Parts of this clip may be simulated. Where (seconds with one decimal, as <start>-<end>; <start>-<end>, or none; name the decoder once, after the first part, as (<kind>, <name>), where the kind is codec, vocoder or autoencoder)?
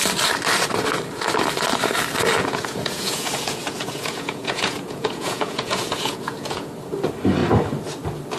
2.4-6.7 (vocoder, Vocos)